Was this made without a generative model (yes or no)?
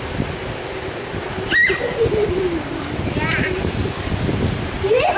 yes